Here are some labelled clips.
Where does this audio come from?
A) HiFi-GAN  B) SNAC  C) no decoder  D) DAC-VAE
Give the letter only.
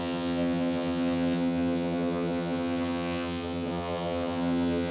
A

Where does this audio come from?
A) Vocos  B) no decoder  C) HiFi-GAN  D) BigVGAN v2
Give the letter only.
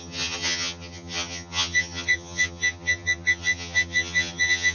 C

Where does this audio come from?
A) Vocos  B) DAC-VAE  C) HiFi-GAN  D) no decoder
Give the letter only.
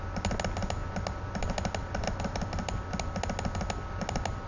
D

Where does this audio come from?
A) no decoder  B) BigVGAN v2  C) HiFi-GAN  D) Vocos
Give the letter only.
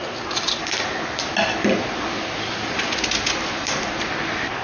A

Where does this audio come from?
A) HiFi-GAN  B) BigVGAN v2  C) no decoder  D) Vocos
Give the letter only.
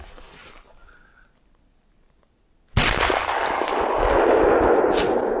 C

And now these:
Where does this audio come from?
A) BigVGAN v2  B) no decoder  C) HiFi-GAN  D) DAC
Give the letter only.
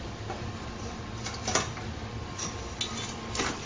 B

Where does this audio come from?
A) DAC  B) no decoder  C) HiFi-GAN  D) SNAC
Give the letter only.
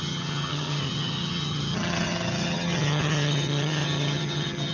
C